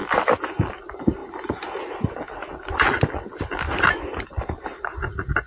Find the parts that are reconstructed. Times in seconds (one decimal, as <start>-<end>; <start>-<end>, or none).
3.3-4.3